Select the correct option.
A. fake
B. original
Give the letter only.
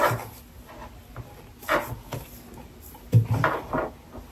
B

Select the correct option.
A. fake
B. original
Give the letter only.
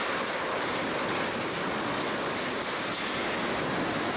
B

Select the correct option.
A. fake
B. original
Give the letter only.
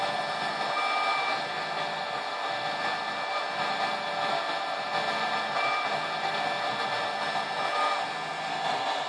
B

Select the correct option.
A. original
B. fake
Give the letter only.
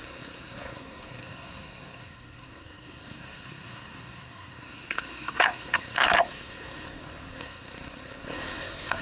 B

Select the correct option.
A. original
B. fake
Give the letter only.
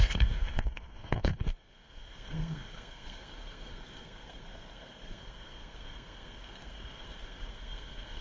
B